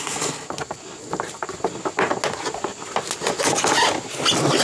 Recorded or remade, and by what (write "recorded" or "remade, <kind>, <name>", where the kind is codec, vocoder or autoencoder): recorded